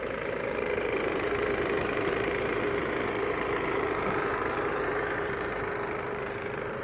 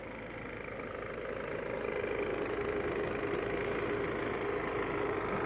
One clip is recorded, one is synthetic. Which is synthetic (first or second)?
first